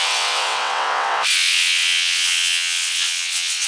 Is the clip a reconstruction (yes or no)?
yes